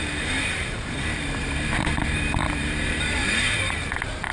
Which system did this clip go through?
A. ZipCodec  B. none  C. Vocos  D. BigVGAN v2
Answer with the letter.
D